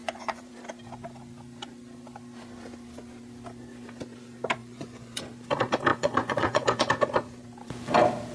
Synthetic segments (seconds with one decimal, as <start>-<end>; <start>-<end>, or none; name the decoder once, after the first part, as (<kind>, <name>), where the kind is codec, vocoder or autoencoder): 0.0-0.5 (vocoder, Vocos); 4.6-5.2; 5.9-6.9